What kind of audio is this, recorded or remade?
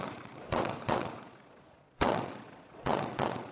remade